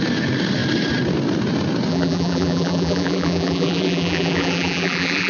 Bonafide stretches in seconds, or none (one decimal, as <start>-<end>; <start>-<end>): 0.0-1.9